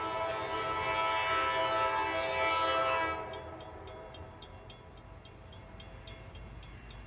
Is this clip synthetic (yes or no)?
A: no